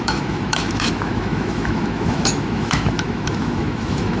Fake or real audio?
fake